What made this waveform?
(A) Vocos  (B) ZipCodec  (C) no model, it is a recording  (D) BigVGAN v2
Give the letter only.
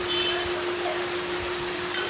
D